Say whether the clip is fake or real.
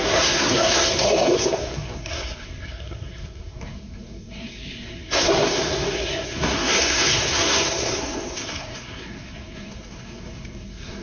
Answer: fake